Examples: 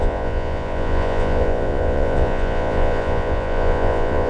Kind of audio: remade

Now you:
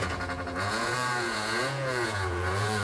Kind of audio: remade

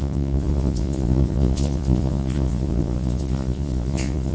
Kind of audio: remade